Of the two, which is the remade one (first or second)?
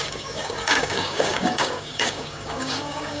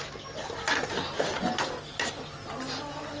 first